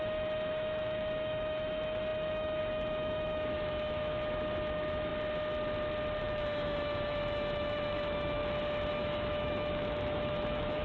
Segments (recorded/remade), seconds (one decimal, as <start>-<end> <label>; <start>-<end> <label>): 0.0-5.1 remade; 5.1-6.2 recorded; 6.2-8.4 remade; 8.4-8.9 recorded; 8.9-10.8 remade